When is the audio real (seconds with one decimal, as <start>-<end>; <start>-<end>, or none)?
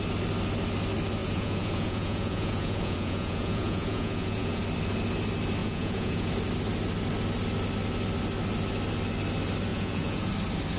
0.0-1.2; 4.6-5.6; 6.3-9.7; 10.3-10.8